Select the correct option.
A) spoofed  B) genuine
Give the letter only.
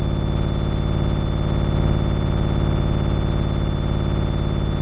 B